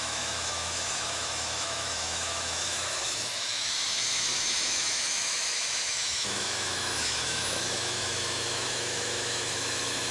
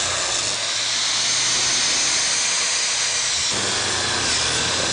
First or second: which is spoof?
first